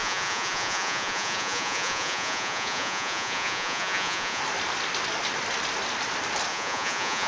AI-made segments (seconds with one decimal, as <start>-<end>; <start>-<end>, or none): 0.0-4.4; 6.5-7.3

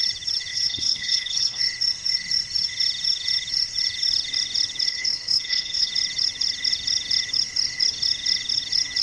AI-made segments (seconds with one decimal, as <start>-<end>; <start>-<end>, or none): 0.5-1.6; 4.9-5.9

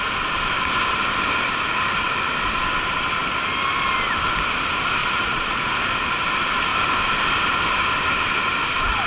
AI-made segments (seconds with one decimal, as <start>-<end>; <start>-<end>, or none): 5.0-5.7